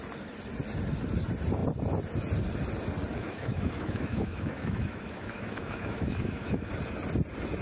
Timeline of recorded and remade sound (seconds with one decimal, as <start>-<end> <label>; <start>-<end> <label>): 0.0-3.1 recorded; 3.1-6.7 remade; 6.7-7.6 recorded